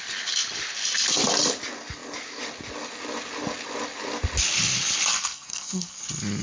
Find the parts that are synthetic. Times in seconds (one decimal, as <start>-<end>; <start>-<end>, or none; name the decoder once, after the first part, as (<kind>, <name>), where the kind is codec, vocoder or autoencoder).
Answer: 5.1-6.0 (codec, SNAC)